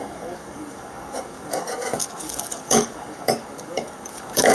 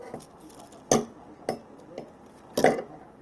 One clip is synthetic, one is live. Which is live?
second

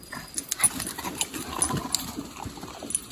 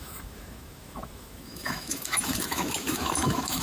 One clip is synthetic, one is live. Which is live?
first